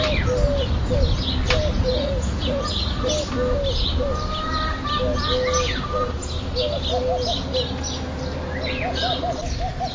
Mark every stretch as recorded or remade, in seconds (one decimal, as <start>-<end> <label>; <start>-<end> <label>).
0.0-1.7 recorded; 1.7-3.1 remade; 3.1-9.9 recorded